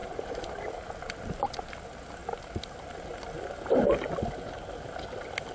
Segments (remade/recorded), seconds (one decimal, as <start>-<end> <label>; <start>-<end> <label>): 0.0-0.8 remade; 0.8-5.5 recorded